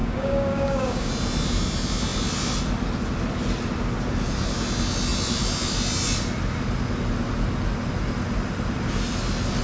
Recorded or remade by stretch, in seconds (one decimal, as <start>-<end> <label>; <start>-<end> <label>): 0.0-1.1 remade; 1.1-9.6 recorded

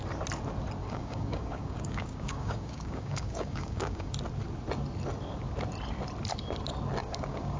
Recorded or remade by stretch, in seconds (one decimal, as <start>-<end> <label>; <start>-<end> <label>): 0.0-0.8 recorded; 0.8-4.1 remade; 4.1-7.0 recorded; 7.0-7.6 remade